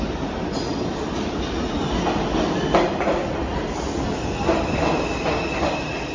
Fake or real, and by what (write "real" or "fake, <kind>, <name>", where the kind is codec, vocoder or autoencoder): real